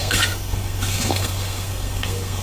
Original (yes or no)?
no